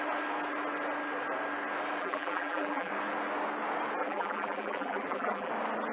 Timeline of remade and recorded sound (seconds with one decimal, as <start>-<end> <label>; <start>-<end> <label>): 0.0-2.0 recorded; 2.0-2.9 remade; 2.9-4.0 recorded; 4.0-5.5 remade; 5.5-5.9 recorded